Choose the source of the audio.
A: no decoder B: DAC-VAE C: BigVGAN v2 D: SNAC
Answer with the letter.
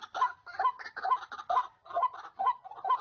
A